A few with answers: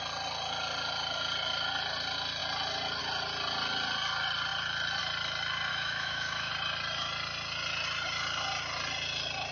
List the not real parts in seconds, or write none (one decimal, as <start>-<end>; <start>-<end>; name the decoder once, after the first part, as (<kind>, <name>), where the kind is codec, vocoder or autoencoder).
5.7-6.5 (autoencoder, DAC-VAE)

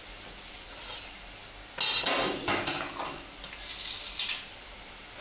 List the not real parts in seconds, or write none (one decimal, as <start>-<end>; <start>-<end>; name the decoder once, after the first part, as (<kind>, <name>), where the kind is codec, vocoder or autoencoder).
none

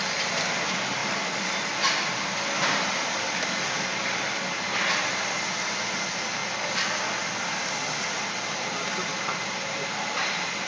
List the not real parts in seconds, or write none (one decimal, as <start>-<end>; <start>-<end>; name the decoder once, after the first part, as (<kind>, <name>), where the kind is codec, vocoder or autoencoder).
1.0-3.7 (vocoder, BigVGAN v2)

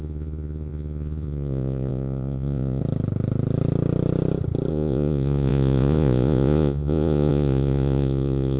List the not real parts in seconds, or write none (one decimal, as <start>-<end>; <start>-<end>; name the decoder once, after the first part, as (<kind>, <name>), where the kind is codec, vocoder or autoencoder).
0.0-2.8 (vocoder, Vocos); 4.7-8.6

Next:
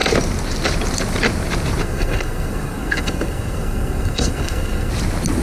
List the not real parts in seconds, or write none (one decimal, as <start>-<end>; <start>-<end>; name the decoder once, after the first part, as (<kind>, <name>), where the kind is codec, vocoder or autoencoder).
1.8-4.9 (codec, SNAC)